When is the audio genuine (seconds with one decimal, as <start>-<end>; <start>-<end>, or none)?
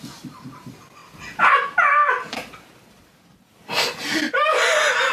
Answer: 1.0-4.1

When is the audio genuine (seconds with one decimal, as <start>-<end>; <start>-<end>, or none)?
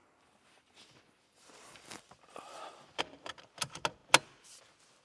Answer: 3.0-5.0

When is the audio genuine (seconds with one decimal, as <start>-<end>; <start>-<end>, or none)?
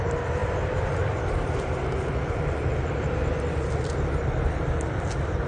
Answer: 0.0-0.4; 3.7-5.5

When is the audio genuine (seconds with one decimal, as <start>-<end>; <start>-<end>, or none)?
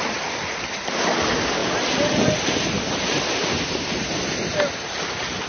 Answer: 0.0-1.6; 4.1-5.5